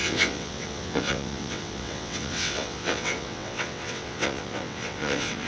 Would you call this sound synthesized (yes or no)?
yes